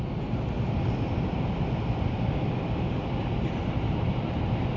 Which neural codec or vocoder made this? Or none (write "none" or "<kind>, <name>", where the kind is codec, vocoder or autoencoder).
none